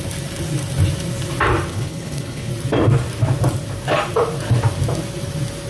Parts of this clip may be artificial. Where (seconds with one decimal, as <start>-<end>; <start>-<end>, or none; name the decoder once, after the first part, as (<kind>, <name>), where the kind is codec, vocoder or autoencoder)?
1.7-2.5 (codec, HILCodec)